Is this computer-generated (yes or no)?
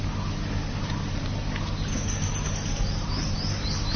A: no